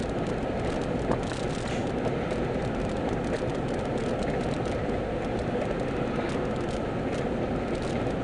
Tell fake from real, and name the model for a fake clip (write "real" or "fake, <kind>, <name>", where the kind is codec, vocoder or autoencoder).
real